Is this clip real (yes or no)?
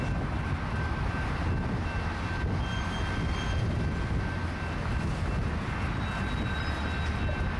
yes